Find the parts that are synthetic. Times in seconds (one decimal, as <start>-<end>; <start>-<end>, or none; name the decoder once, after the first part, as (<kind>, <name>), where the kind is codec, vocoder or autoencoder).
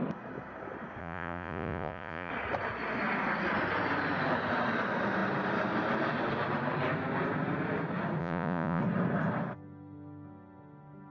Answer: 1.0-2.3 (vocoder, Vocos); 8.2-8.8